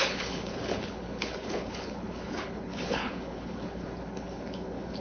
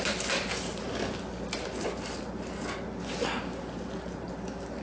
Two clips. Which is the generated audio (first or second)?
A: first